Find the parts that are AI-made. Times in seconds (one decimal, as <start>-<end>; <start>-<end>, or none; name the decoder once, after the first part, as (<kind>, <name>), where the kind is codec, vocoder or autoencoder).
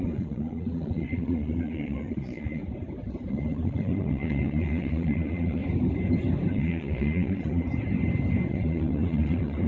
0.0-2.6 (vocoder, Vocos); 3.3-5.6; 6.5-7.7; 8.5-9.7